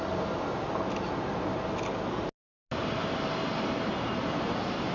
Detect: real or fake real